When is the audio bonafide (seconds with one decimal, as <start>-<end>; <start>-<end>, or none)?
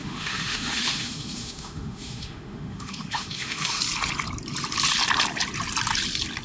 3.8-6.4